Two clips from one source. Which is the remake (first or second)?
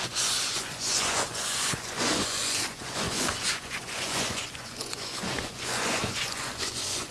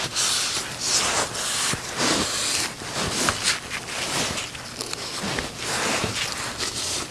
first